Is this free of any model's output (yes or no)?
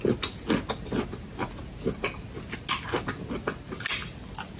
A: yes